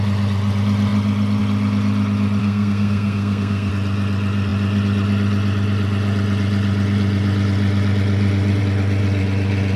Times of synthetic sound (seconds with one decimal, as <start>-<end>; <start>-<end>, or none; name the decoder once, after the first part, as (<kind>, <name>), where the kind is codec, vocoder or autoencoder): 2.4-3.7 (codec, SNAC)